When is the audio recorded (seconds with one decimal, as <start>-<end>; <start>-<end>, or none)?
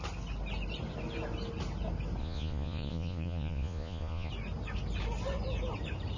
0.0-2.2; 4.3-6.2